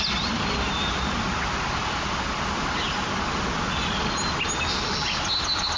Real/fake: real